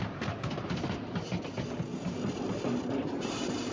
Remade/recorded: recorded